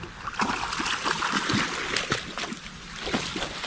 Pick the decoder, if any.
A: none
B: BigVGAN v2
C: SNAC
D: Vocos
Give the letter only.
A